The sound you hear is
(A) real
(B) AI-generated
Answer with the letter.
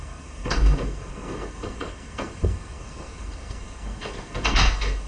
B